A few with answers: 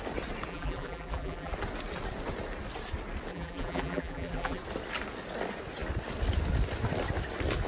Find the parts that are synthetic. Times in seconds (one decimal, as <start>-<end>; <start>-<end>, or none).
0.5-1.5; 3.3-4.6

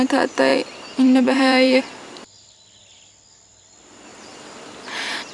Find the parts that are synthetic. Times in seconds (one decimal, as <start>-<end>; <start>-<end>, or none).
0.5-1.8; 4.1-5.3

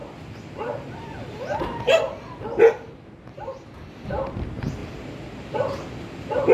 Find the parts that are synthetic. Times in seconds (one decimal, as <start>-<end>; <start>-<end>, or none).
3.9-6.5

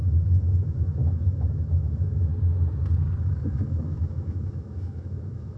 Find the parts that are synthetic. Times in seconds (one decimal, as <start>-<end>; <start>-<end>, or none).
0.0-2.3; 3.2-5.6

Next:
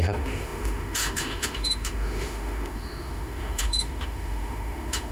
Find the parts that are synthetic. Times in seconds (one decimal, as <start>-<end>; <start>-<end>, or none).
0.0-5.1